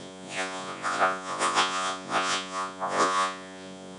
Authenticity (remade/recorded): remade